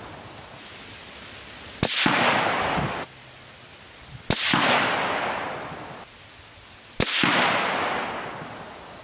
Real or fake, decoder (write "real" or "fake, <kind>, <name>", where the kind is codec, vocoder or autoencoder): real